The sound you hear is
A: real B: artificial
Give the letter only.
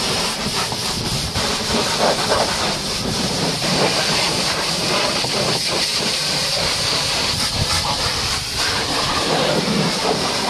B